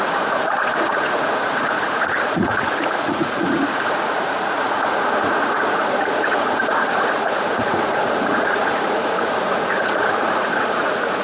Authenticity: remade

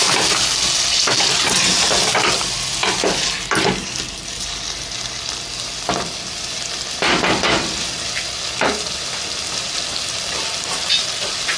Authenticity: recorded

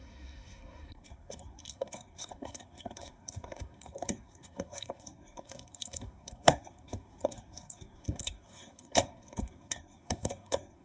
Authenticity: remade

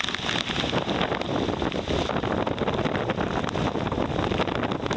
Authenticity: recorded